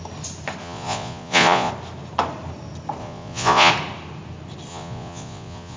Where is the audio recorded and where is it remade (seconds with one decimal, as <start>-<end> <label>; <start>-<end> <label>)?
0.0-0.6 recorded; 0.6-1.7 remade; 1.7-3.0 recorded; 3.0-3.7 remade; 3.7-4.7 recorded; 4.7-5.8 remade